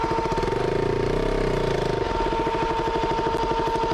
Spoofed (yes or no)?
no